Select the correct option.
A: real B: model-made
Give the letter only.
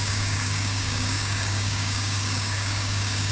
B